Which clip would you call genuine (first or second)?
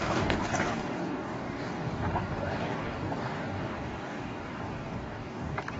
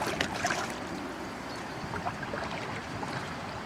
second